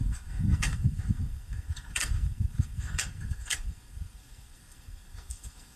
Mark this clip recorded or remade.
remade